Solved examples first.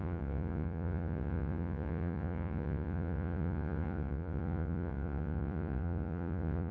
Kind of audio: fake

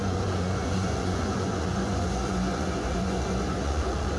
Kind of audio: fake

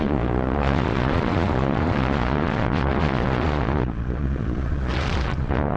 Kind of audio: fake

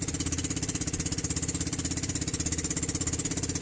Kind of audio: real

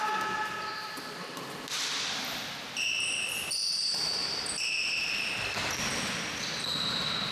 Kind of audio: real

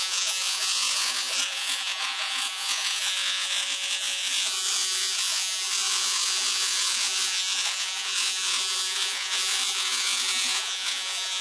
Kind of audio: fake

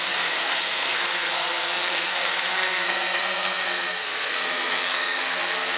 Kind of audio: fake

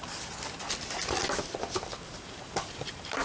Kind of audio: real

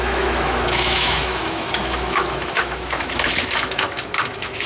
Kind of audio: fake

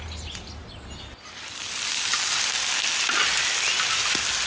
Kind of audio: real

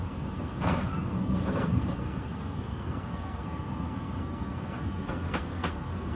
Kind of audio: fake